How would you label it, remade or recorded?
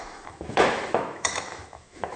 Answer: remade